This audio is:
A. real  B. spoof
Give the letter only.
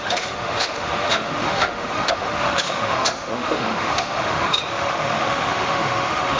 B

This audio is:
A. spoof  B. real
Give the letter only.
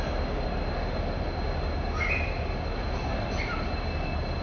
B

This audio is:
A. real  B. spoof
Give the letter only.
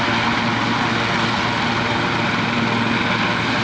A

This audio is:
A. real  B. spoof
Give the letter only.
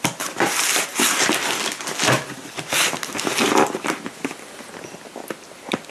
A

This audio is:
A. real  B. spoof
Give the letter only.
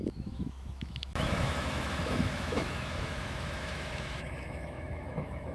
B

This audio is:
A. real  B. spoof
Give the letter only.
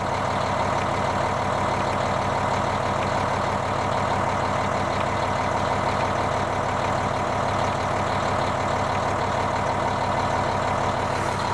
A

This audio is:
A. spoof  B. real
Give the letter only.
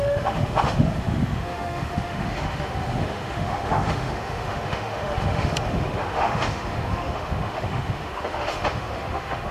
A